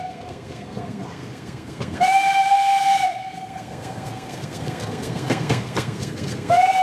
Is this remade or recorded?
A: remade